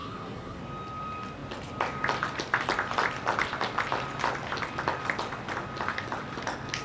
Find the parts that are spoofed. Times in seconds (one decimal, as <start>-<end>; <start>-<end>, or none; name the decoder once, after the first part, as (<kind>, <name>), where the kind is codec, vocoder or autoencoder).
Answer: 0.0-0.6 (codec, SNAC)